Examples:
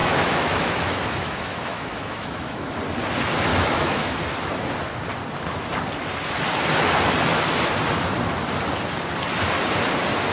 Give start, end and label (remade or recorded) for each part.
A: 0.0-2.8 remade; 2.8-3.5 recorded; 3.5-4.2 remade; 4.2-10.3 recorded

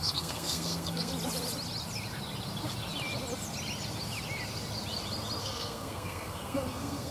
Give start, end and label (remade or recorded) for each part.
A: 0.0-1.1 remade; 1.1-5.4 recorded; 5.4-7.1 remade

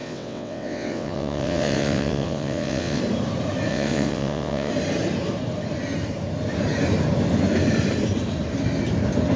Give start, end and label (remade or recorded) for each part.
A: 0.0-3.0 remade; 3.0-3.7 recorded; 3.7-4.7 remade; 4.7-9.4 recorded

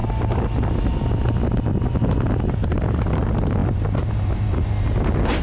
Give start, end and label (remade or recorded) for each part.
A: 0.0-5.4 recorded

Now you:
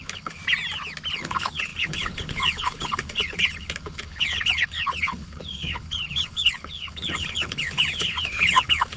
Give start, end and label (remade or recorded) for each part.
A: 0.0-0.4 remade; 0.4-1.1 recorded; 1.1-9.0 remade

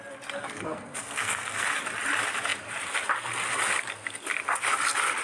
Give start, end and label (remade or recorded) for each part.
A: 0.0-0.4 recorded; 0.4-1.7 remade; 1.7-5.2 recorded

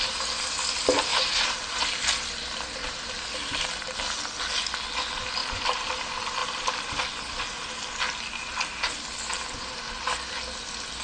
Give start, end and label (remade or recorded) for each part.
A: 0.0-1.1 recorded; 1.1-1.8 remade; 1.8-5.4 recorded; 5.4-5.9 remade; 5.9-6.4 recorded; 6.4-7.0 remade; 7.0-11.0 recorded